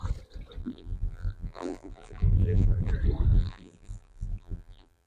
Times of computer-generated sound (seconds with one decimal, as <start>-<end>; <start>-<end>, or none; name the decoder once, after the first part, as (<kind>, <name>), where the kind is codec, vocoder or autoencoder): 0.6-2.9 (vocoder, BigVGAN v2); 3.3-5.1